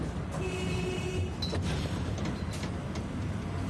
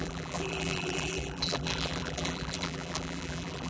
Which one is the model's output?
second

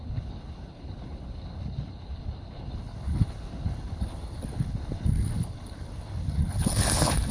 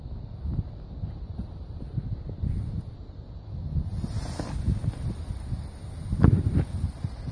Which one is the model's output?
first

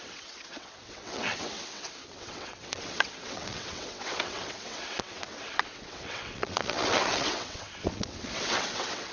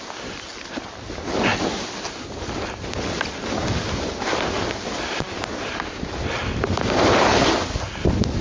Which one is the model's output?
first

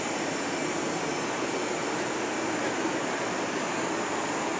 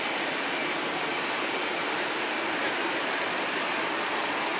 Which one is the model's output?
second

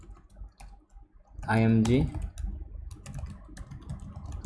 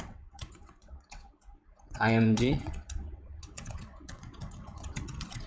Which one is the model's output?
second